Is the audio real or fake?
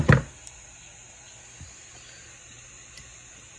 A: real